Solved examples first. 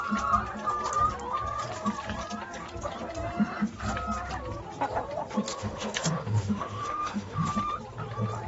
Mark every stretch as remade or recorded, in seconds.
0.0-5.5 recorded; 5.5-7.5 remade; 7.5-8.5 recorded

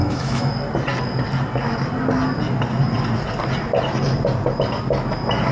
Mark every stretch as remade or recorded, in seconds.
0.0-0.5 remade; 0.5-5.5 recorded

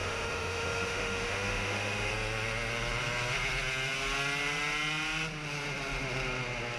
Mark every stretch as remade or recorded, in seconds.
0.0-2.1 remade; 2.1-6.8 recorded

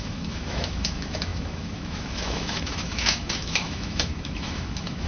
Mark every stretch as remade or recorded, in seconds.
0.0-5.1 remade

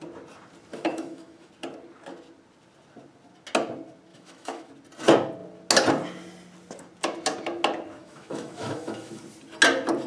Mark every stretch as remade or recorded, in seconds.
0.0-0.7 recorded; 0.7-1.5 remade; 1.5-4.1 recorded; 4.1-4.7 remade; 4.7-8.0 recorded; 8.0-9.2 remade; 9.2-10.1 recorded

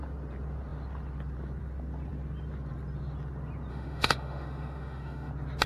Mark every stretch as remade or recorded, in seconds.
0.0-3.7 recorded; 3.7-5.3 remade; 5.3-5.7 recorded

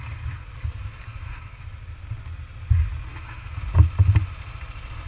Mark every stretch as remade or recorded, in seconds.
0.0-1.1 recorded; 1.1-1.6 remade; 1.6-3.1 recorded; 3.1-3.6 remade; 3.6-5.1 recorded

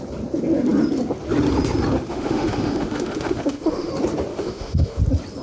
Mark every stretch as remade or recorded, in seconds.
0.0-2.1 recorded; 2.1-3.9 remade; 3.9-4.3 recorded; 4.3-5.0 remade; 5.0-5.4 recorded